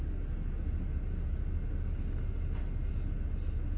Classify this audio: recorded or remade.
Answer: recorded